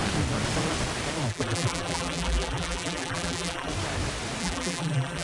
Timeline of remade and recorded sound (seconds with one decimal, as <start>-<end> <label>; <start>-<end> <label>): 0.0-1.3 recorded; 1.3-3.7 remade; 3.7-4.4 recorded; 4.4-5.2 remade